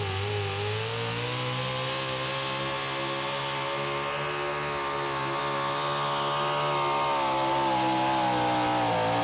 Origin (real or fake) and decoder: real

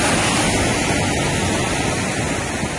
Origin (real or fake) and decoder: real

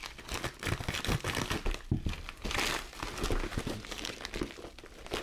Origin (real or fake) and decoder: real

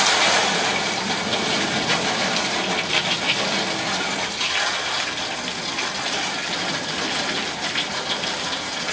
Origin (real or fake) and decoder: real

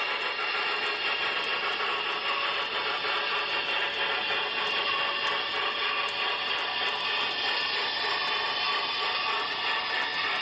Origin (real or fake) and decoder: real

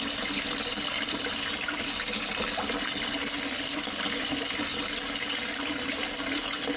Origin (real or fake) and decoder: real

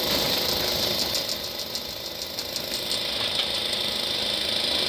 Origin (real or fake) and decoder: real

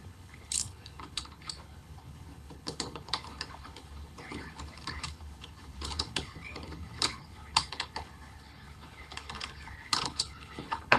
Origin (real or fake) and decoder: fake, codec, HILCodec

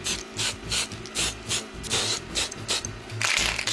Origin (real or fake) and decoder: real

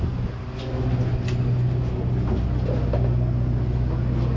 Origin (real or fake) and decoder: real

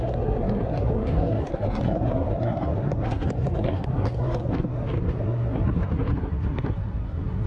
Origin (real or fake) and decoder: fake, codec, SNAC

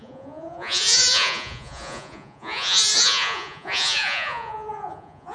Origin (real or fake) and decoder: fake, vocoder, Vocos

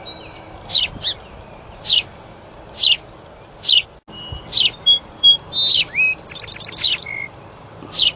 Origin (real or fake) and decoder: real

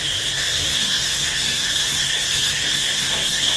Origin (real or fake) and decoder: fake, codec, SNAC